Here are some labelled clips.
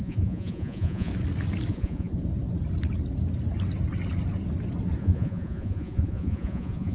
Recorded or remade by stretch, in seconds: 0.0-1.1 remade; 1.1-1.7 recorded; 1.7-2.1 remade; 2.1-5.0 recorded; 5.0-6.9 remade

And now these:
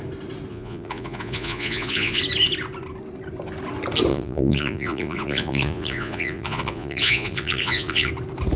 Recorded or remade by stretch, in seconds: 0.0-0.5 recorded; 0.5-2.2 remade; 2.2-4.1 recorded; 4.1-8.1 remade; 8.1-8.6 recorded

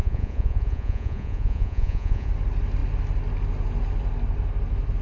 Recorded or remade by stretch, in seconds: 0.0-2.3 remade; 2.3-5.0 recorded

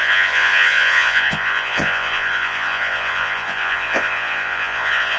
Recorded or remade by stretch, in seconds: 0.0-5.2 remade

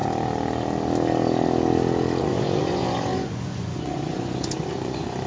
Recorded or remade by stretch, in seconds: 0.0-2.2 recorded; 2.2-5.3 remade

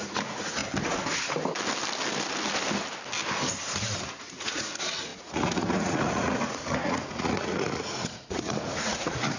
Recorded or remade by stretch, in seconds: 0.0-0.6 remade; 0.6-4.2 recorded; 4.2-9.4 remade